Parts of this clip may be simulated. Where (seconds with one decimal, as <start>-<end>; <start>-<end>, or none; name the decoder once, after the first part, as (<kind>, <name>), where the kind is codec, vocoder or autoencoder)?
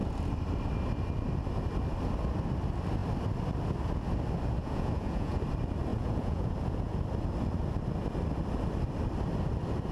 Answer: 4.6-5.4 (vocoder, Vocos); 5.9-7.0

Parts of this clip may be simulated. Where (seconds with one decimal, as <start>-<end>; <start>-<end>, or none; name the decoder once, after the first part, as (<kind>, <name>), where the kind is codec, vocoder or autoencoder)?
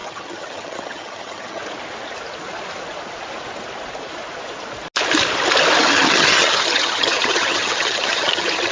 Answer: 0.0-1.6 (vocoder, HiFi-GAN); 5.8-8.7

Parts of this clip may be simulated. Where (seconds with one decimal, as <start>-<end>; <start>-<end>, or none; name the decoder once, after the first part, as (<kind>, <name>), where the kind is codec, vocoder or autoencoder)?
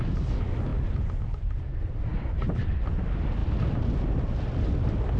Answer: none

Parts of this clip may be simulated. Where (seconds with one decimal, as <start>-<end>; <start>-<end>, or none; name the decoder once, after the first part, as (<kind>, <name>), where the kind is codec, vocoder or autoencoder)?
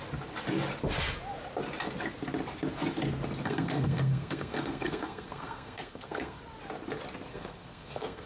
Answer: 3.4-6.4 (codec, SNAC); 7.3-8.3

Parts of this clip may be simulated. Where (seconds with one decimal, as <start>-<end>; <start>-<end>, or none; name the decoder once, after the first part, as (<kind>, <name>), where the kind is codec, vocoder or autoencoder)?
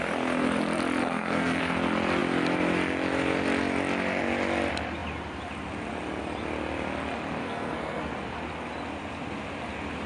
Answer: 1.0-1.6 (codec, SNAC); 7.4-8.1